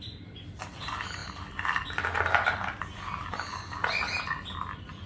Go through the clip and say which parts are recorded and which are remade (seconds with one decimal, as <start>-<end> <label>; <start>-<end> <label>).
0.0-5.1 recorded